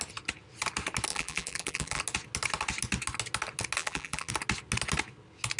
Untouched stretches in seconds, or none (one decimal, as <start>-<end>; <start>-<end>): 0.0-1.1; 2.0-3.8; 4.3-5.6